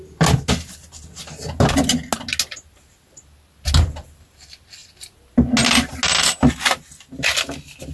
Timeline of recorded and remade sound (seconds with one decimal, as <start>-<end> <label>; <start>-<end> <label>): 0.0-7.9 recorded